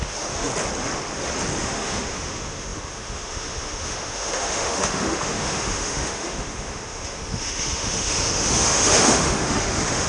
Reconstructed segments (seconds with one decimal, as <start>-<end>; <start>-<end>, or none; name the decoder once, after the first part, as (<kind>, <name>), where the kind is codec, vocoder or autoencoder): 0.0-0.5 (autoencoder, DAC-VAE); 1.6-10.1